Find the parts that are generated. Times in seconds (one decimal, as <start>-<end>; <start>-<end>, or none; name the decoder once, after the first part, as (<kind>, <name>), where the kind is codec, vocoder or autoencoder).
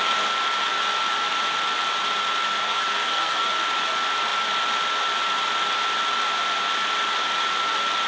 2.6-3.5 (codec, SNAC)